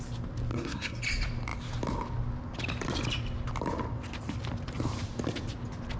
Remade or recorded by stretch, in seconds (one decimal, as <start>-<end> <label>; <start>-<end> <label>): 0.0-0.5 recorded; 0.5-1.0 remade; 1.0-6.0 recorded